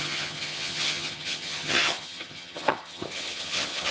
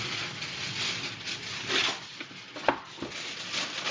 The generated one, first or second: first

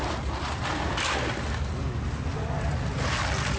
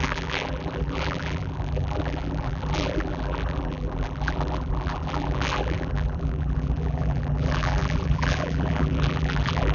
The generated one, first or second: second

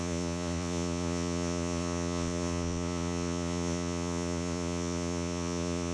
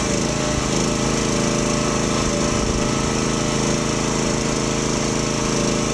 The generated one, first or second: first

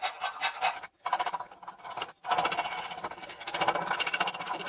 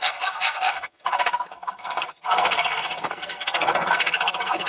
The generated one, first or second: second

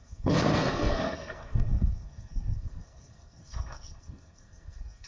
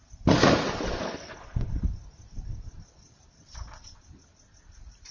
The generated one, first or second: first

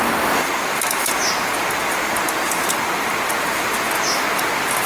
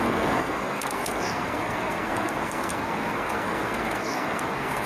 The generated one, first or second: second